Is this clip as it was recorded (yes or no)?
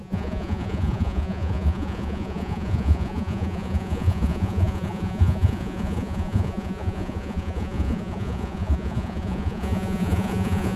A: no